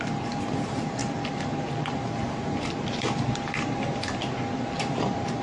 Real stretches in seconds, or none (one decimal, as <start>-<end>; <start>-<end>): 1.0-1.5